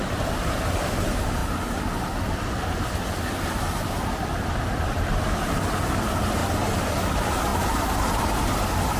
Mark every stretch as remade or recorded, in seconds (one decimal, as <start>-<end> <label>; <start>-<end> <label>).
0.0-1.4 remade; 1.4-3.9 recorded; 3.9-6.4 remade; 6.4-6.9 recorded; 6.9-9.0 remade

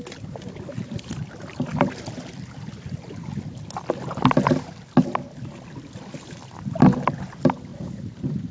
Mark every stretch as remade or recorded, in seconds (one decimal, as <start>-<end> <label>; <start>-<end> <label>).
0.0-7.7 recorded; 7.7-8.5 remade